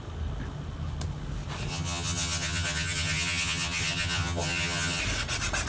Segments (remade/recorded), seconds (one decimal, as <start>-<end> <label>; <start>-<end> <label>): 0.0-1.7 recorded; 1.7-5.0 remade; 5.0-5.7 recorded